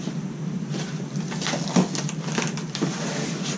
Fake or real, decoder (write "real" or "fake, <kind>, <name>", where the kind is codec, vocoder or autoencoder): real